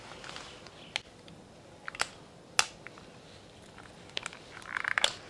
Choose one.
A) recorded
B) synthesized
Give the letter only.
A